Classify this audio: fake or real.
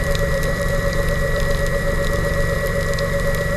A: fake